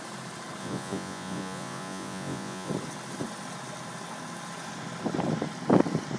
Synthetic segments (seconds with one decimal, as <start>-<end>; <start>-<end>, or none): 0.6-2.7